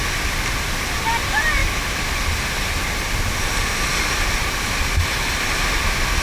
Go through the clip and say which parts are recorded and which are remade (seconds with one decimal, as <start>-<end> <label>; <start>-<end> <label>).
0.0-1.6 recorded; 1.6-2.1 remade; 2.1-6.2 recorded